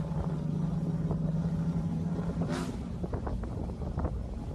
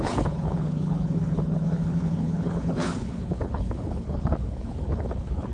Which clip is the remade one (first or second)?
second